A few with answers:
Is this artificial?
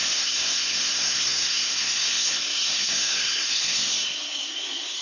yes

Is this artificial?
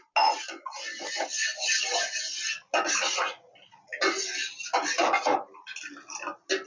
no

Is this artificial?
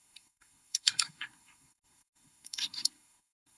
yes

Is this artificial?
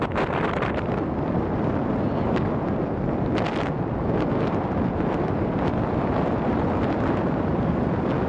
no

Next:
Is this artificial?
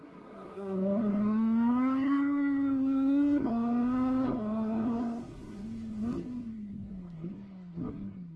yes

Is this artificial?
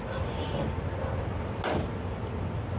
no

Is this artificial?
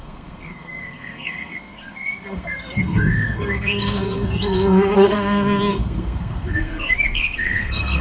yes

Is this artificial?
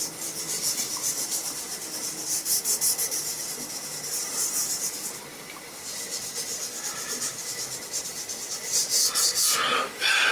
no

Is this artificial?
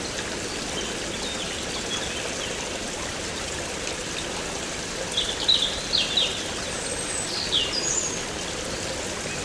no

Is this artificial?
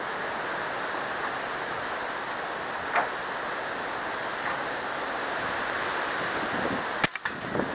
no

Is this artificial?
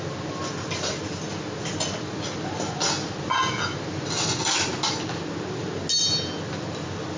no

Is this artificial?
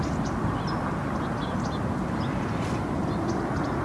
no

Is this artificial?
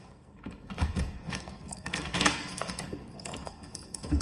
yes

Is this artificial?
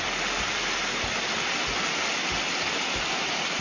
no